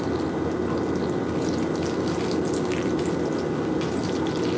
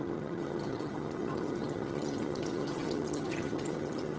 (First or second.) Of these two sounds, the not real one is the second